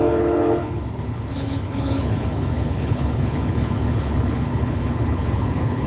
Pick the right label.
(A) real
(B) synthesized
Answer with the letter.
B